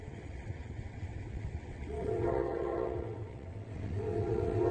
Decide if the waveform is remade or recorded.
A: remade